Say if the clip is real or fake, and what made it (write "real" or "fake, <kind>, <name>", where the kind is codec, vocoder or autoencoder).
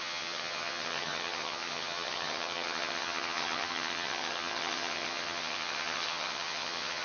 fake, vocoder, HiFi-GAN